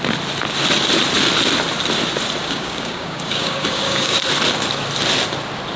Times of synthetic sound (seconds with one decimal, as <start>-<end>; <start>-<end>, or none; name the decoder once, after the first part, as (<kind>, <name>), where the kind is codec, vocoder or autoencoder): 2.4-4.2 (codec, DAC)